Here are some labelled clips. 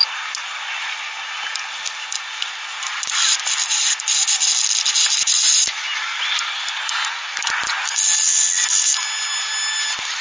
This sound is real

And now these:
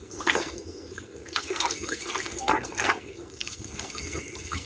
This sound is fake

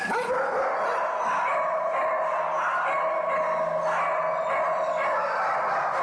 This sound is real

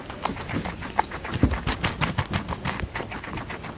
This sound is real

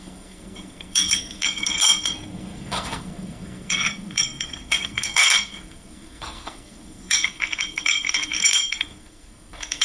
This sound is fake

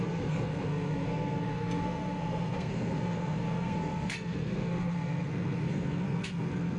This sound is fake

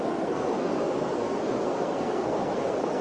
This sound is fake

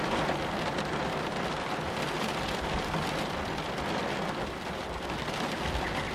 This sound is real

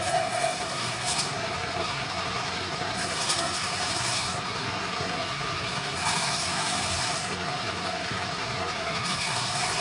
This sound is fake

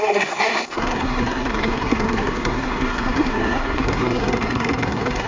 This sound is fake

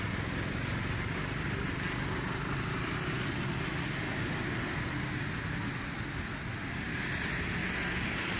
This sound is real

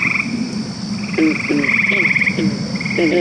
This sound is real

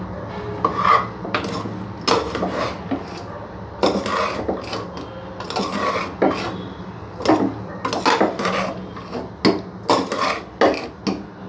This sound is real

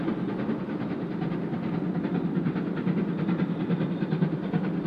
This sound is real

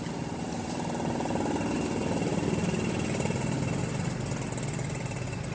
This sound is real